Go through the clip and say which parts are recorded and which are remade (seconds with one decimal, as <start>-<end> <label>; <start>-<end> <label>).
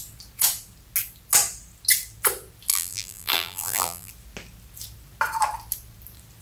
0.0-2.7 recorded; 2.7-4.1 remade; 4.1-6.4 recorded